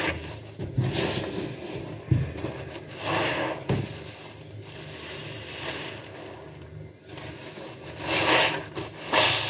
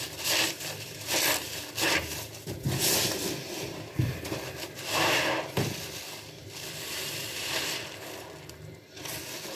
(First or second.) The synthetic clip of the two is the second